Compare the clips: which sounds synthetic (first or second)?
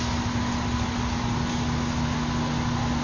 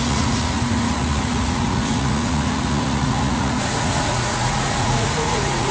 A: second